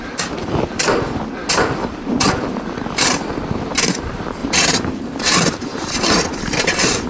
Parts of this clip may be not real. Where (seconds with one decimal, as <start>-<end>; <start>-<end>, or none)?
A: 4.4-7.1